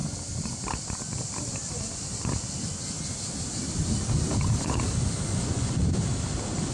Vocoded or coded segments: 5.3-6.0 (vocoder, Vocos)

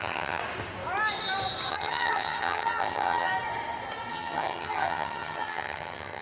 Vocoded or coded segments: 0.0-0.4 (vocoder, HiFi-GAN); 1.7-3.3; 4.1-6.2

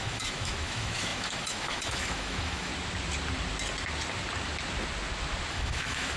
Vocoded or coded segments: 0.0-2.7 (autoencoder, DAC-VAE); 5.5-6.2

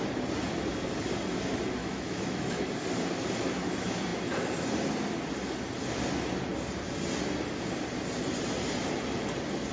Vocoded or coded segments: 1.8-2.7 (autoencoder, DAC-VAE)

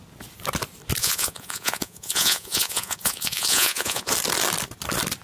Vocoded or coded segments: 1.0-4.1 (vocoder, Vocos)